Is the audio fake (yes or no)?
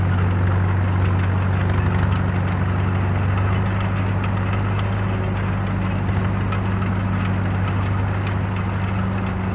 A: no